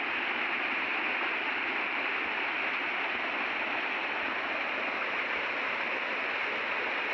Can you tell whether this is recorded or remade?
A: recorded